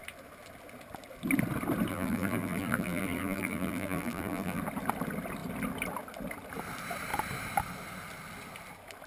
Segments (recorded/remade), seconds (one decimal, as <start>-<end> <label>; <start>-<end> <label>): 0.0-1.9 recorded; 1.9-4.6 remade; 4.6-9.1 recorded

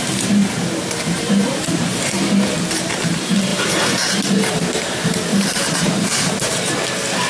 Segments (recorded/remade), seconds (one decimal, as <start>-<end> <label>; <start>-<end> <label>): 0.0-0.4 remade; 0.4-1.1 recorded; 1.1-5.3 remade; 5.3-7.3 recorded

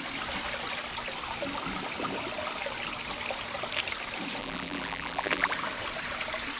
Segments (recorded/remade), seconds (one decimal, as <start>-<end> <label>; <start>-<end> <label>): 0.0-4.4 recorded; 4.4-5.5 remade; 5.5-6.6 recorded

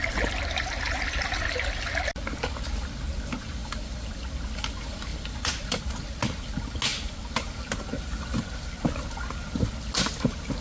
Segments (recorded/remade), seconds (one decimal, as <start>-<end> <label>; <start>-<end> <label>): 0.0-3.6 recorded; 3.6-4.3 remade; 4.3-5.1 recorded; 5.1-5.8 remade; 5.8-10.6 recorded